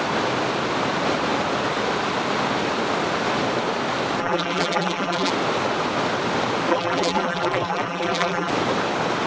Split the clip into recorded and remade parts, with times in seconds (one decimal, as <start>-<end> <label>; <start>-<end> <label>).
0.0-4.2 recorded; 4.2-5.3 remade; 5.3-6.7 recorded; 6.7-8.5 remade; 8.5-9.3 recorded

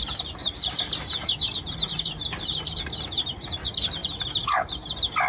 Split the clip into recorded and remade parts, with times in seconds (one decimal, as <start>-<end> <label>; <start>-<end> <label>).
0.0-0.4 recorded; 0.4-3.6 remade; 3.6-4.0 recorded; 4.0-5.3 remade

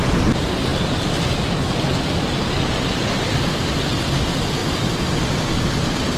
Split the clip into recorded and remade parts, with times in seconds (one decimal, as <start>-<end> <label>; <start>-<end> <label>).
0.0-4.6 recorded; 4.6-5.7 remade; 5.7-6.2 recorded

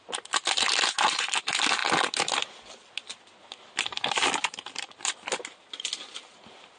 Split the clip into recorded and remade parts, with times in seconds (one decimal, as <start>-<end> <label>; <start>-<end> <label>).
0.0-4.4 recorded; 4.4-5.0 remade; 5.0-6.8 recorded

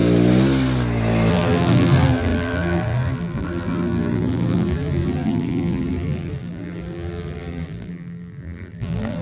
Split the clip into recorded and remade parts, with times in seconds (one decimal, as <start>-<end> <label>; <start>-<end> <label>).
0.0-1.3 recorded; 1.3-9.2 remade

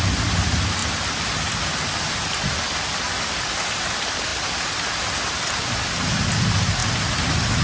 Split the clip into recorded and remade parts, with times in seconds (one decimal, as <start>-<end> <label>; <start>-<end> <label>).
0.0-7.6 recorded